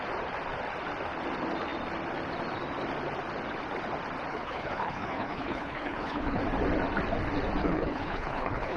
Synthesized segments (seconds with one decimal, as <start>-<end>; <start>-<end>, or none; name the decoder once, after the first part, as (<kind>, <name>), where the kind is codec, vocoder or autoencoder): 4.3-6.4 (codec, HILCodec); 7.6-8.8